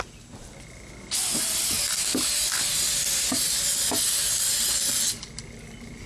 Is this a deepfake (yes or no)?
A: no